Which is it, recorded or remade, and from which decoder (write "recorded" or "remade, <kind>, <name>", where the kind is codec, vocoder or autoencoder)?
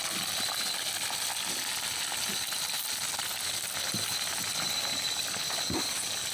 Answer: recorded